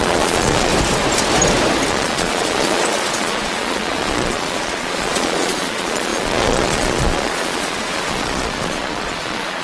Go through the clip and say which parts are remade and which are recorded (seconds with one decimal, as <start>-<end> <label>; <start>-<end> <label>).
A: 0.0-0.7 remade; 0.7-1.9 recorded; 1.9-9.6 remade